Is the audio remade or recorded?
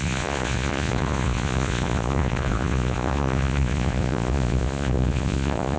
remade